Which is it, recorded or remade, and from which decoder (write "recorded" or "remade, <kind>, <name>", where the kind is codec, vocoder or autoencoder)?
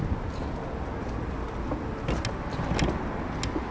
recorded